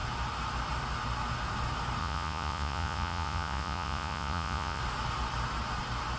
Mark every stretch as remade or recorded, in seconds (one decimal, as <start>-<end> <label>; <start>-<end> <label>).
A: 0.0-2.0 recorded; 2.0-4.8 remade; 4.8-6.2 recorded